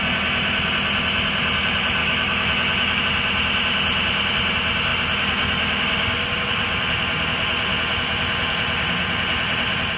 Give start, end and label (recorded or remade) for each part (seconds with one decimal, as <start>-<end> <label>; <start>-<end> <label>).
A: 0.0-2.0 recorded; 2.0-3.0 remade; 3.0-10.0 recorded

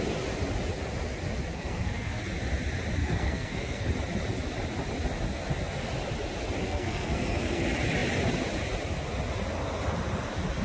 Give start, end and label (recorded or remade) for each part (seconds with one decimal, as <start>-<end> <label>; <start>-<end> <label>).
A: 0.0-1.5 recorded; 1.5-2.2 remade; 2.2-3.0 recorded; 3.0-3.9 remade; 3.9-6.6 recorded; 6.6-7.6 remade; 7.6-10.6 recorded